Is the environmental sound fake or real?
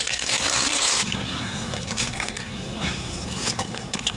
fake